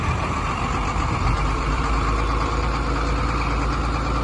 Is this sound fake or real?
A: fake